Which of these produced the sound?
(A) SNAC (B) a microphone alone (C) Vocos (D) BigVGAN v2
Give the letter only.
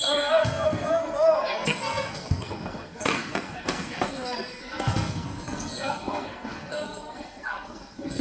A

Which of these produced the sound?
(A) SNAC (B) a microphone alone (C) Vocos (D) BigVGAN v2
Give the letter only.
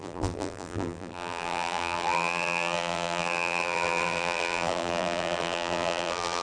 D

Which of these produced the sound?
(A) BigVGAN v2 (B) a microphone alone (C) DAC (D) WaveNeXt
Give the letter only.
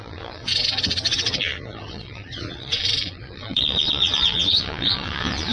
D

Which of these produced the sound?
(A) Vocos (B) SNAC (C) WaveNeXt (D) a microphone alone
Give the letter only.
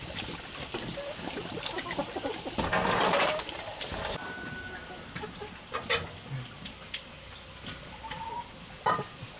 D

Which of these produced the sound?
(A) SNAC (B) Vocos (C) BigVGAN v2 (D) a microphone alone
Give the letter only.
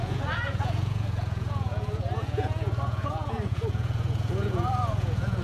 B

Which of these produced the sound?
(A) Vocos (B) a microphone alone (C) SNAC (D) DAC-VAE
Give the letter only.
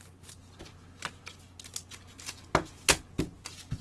B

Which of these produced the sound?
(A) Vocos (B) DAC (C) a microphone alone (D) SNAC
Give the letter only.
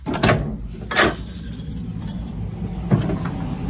C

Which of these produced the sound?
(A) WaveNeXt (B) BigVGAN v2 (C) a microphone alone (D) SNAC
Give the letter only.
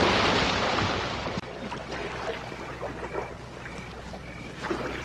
C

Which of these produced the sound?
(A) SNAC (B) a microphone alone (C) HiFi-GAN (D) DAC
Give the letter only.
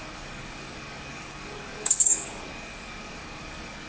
D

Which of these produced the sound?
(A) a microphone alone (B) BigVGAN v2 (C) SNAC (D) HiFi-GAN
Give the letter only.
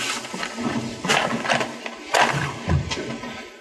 A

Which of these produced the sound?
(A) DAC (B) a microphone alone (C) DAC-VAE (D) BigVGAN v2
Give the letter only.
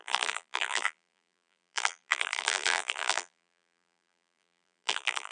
D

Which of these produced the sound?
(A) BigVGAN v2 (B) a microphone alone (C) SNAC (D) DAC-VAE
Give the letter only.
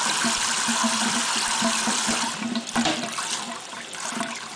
B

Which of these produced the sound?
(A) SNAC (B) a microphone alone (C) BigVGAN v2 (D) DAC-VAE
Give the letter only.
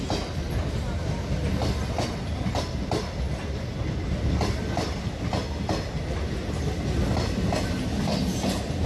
B